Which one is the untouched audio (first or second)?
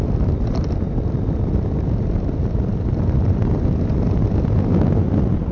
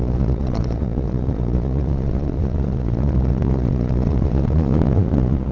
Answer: first